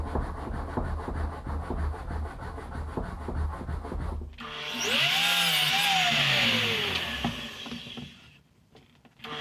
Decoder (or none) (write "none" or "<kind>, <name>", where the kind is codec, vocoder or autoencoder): none